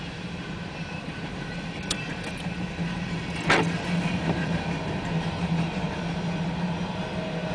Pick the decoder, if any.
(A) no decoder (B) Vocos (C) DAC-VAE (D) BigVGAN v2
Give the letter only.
D